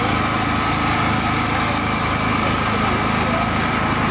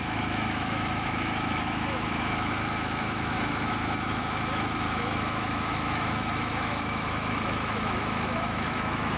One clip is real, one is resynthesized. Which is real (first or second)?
first